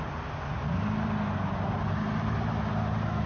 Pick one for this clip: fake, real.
real